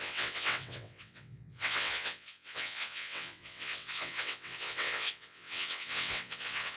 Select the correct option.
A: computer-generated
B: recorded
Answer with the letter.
A